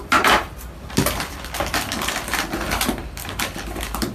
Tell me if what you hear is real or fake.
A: fake